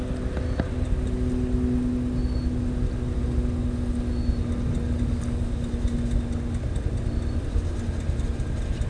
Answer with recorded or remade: recorded